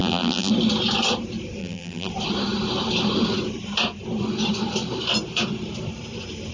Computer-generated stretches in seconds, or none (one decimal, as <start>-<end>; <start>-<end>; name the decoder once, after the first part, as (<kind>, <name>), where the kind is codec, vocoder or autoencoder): 0.0-0.5 (vocoder, BigVGAN v2); 1.6-2.1